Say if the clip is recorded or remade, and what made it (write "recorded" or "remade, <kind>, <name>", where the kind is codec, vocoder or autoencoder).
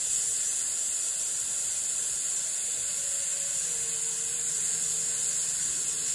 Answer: recorded